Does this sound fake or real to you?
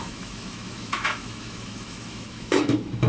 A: fake